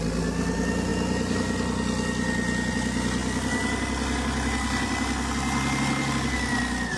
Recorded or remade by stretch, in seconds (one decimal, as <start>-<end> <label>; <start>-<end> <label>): 0.0-7.0 recorded

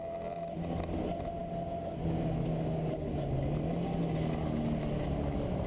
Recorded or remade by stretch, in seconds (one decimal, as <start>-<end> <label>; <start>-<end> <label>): 0.0-5.7 recorded

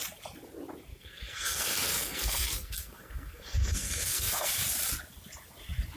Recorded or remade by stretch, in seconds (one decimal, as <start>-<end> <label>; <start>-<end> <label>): 0.0-0.9 recorded; 0.9-4.5 remade; 4.5-6.0 recorded

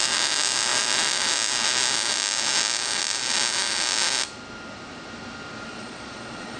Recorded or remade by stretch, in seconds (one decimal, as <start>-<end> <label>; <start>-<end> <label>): 0.0-5.7 recorded; 5.7-6.6 remade

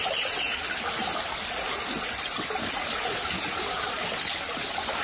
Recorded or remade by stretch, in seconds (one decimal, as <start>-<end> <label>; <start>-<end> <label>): 0.0-5.0 recorded

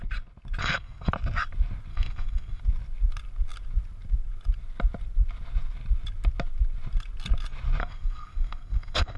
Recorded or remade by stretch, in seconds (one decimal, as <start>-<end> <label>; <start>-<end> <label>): 0.0-0.6 recorded; 0.6-1.1 remade; 1.1-1.9 recorded; 1.9-2.6 remade; 2.6-7.8 recorded; 7.8-9.2 remade

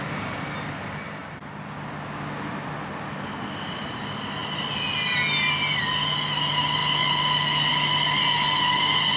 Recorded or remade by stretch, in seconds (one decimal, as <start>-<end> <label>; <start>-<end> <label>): 0.0-9.2 recorded

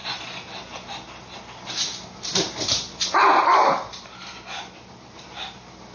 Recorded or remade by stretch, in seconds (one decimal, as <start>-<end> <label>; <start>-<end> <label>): 0.0-5.9 recorded